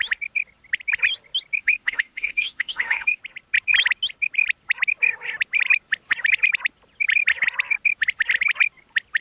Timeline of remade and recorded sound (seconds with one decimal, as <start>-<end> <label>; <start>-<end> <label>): 0.0-1.6 recorded; 1.6-3.2 remade; 3.2-9.2 recorded